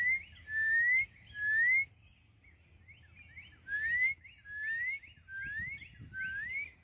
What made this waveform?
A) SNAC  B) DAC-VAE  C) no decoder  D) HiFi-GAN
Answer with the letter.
C